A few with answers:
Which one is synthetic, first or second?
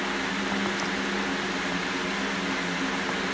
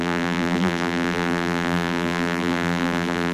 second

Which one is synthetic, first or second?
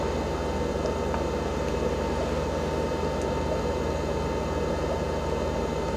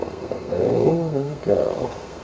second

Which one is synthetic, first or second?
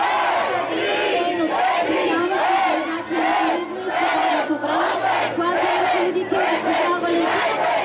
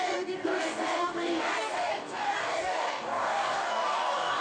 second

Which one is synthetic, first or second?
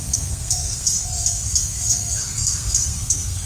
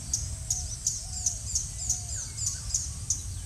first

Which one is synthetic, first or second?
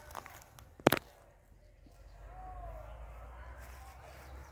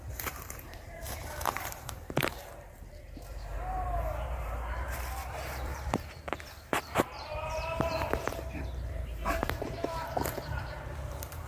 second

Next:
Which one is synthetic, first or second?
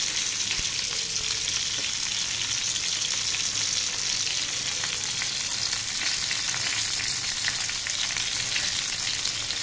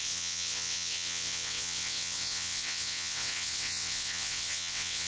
second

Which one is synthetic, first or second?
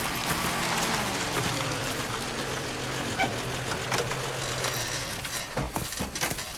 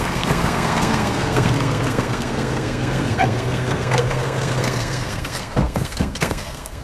second